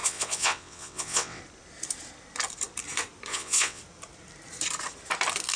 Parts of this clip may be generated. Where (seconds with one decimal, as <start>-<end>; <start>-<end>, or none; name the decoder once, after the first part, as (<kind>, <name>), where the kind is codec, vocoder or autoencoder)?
0.0-1.4 (vocoder, WaveNeXt); 3.3-3.8